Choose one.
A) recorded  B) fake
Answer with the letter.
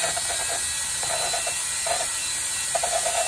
A